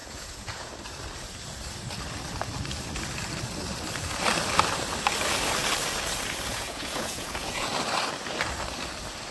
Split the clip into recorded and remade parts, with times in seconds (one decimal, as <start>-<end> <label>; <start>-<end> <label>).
0.0-0.7 remade; 0.7-6.5 recorded; 6.5-7.7 remade; 7.7-9.3 recorded